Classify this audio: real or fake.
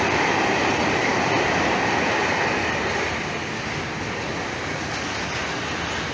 real